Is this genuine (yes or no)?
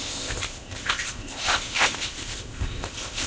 no